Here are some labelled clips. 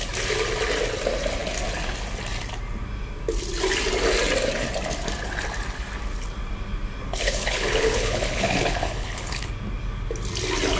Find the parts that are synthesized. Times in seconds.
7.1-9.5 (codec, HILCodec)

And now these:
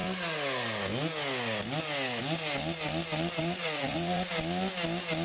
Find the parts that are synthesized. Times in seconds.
3.4-4.3 (vocoder, Vocos)